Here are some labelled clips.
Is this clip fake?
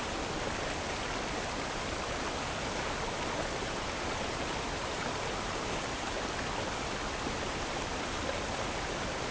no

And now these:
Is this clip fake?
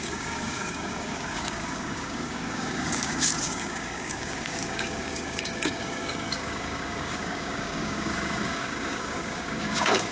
yes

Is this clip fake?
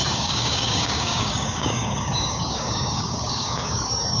yes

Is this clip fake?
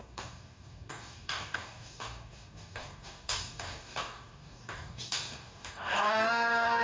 yes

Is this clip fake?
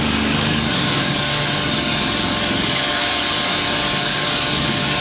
yes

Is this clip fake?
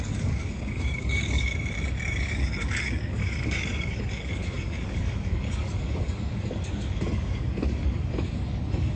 yes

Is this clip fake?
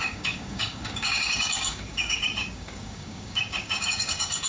yes